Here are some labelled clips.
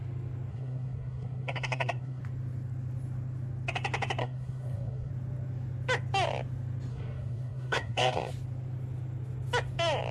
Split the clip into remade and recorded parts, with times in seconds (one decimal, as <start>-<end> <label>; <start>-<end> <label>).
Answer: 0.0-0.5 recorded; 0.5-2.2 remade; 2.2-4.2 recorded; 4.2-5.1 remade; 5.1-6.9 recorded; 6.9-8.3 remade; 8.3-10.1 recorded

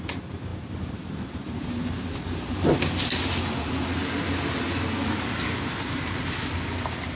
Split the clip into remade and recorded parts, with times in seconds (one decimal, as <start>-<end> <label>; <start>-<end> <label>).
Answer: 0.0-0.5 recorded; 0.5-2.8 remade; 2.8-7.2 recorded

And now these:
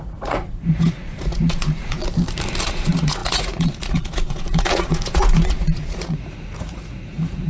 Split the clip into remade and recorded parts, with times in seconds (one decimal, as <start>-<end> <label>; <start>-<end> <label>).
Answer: 0.0-2.0 remade; 2.0-2.6 recorded; 2.6-7.5 remade